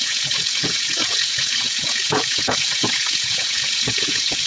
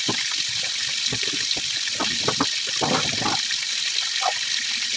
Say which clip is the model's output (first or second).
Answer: first